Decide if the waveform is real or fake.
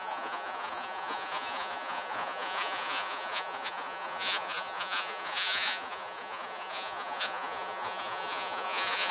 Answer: fake